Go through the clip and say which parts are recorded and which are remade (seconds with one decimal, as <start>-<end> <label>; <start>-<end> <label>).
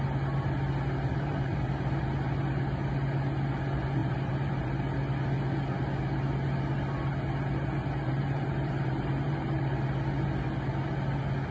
0.0-1.1 recorded; 1.1-2.0 remade; 2.0-4.0 recorded; 4.0-4.7 remade; 4.7-8.0 recorded; 8.0-9.9 remade; 9.9-11.5 recorded